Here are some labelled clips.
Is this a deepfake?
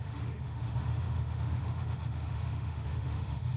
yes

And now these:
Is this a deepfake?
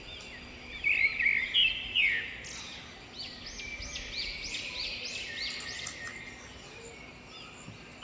no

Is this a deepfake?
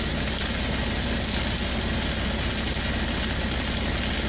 no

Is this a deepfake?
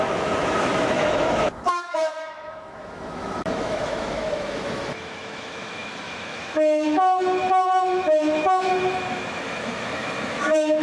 yes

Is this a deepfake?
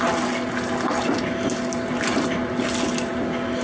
no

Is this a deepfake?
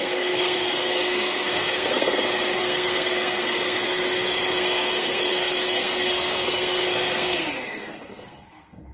yes